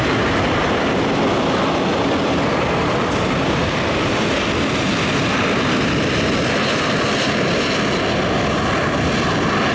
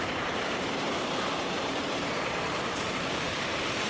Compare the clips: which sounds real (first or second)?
first